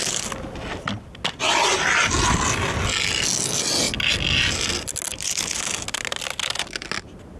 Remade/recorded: recorded